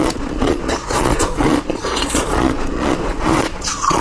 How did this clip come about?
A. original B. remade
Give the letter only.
B